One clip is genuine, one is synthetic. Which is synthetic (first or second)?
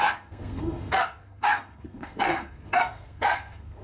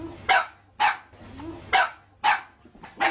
first